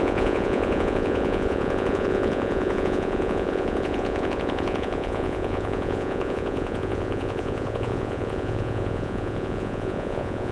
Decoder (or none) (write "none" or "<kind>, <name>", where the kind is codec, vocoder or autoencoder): vocoder, Vocos